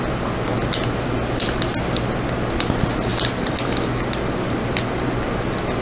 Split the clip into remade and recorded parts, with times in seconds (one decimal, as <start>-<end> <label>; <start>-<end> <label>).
0.0-5.8 recorded